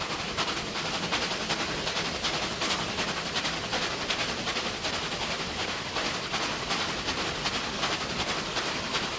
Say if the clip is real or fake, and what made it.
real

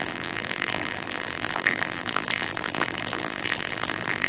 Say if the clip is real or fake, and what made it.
fake, vocoder, BigVGAN v2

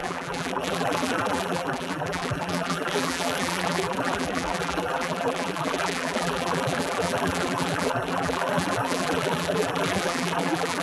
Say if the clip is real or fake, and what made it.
fake, vocoder, BigVGAN v2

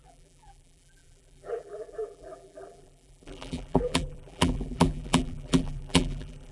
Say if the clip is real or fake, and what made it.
fake, vocoder, BigVGAN v2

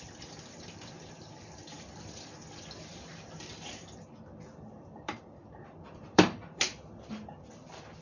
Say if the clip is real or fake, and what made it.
fake, vocoder, BigVGAN v2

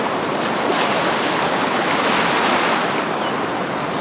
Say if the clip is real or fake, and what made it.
real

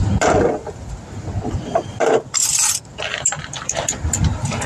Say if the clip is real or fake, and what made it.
fake, vocoder, BigVGAN v2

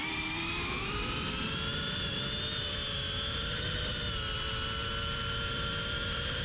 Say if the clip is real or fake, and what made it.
fake, vocoder, BigVGAN v2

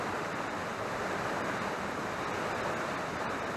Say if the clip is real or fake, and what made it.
real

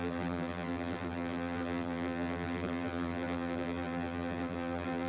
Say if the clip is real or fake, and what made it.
fake, vocoder, BigVGAN v2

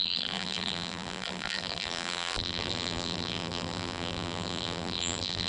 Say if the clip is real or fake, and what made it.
fake, vocoder, BigVGAN v2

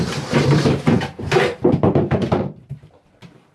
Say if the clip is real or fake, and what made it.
fake, vocoder, BigVGAN v2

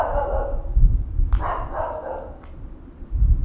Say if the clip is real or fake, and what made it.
real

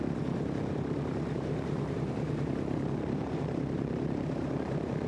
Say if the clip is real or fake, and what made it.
fake, vocoder, BigVGAN v2